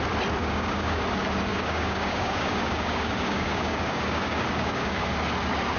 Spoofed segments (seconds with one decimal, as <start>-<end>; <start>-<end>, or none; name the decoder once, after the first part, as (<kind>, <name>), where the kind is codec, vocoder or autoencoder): 0.4-1.0 (codec, DAC); 1.5-5.0